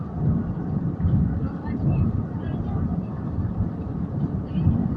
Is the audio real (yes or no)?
no